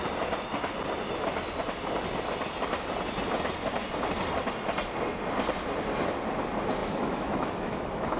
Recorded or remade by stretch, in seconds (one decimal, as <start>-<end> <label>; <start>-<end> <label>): 0.0-6.8 recorded; 6.8-8.2 remade